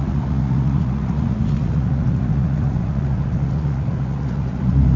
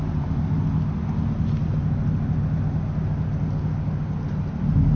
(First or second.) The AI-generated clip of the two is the first